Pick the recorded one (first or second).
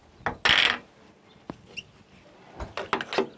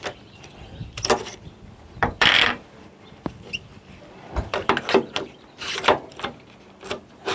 first